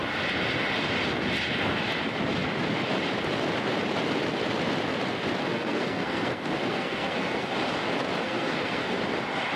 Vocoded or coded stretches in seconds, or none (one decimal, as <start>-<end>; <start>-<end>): 5.4-7.5; 8.2-9.0